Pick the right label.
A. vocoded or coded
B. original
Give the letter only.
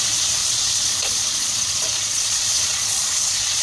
A